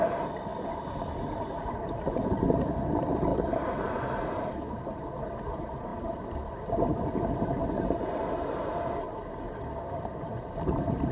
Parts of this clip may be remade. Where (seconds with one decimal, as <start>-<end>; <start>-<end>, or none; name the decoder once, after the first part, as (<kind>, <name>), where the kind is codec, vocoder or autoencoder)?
none